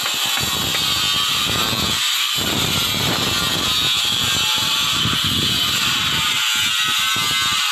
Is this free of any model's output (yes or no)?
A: yes